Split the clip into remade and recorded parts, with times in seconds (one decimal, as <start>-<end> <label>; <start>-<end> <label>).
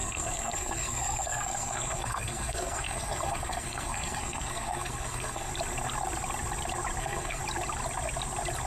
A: 0.0-5.5 remade; 5.5-7.0 recorded; 7.0-7.4 remade; 7.4-8.7 recorded